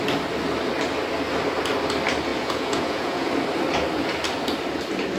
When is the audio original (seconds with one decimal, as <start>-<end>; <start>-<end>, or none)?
0.0-2.3; 3.3-5.2

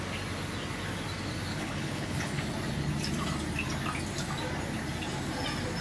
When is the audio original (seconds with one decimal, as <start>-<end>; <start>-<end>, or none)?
0.0-1.5; 2.4-5.8

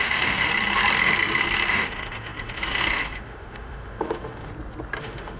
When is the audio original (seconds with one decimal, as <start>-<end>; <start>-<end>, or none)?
0.5-1.7; 4.5-5.0

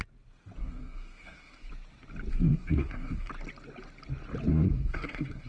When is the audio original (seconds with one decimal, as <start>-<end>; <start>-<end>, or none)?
0.0-0.6; 1.7-2.3; 3.3-4.5

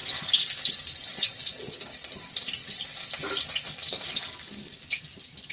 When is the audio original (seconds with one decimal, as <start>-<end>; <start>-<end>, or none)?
0.5-5.5

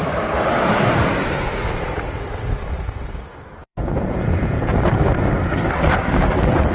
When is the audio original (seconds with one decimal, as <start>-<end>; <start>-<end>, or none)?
0.0-3.6; 4.8-6.7